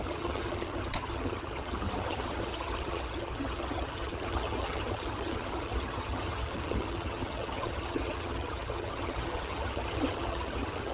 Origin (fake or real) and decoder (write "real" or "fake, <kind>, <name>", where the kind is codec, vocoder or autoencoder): fake, vocoder, HiFi-GAN